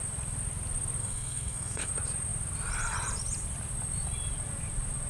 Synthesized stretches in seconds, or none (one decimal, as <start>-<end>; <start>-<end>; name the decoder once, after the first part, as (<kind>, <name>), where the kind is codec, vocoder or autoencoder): 1.0-1.9 (codec, SNAC)